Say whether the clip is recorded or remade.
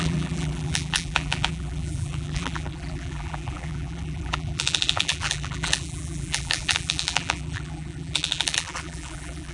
remade